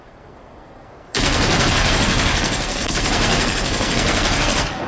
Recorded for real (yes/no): no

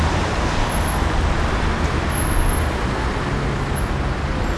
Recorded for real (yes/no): yes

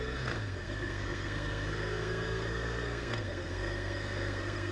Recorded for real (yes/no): no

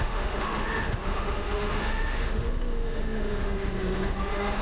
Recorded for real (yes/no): no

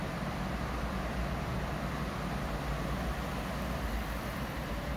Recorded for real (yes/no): yes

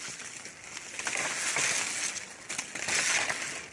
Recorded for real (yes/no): yes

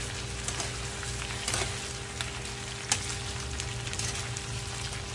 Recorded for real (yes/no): yes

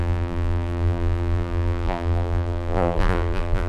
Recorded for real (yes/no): no